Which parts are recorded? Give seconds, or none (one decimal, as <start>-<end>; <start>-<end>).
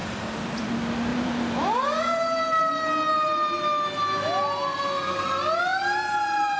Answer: 0.7-1.1; 2.7-4.7; 5.3-5.7